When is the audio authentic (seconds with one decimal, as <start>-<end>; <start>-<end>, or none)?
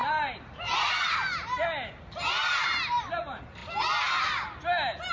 0.9-2.4; 3.0-5.1